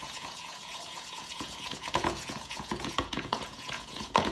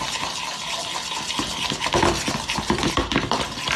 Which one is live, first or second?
second